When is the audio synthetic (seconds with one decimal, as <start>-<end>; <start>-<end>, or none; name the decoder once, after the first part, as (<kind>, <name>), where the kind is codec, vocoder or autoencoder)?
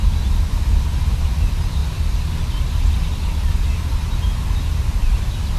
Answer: none